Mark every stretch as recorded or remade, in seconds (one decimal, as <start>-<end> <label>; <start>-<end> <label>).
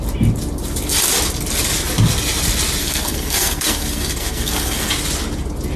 0.0-2.8 recorded; 2.8-4.9 remade; 4.9-5.8 recorded